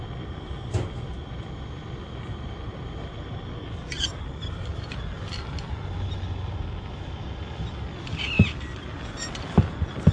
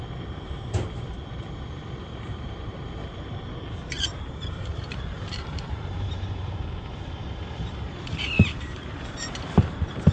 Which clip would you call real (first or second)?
first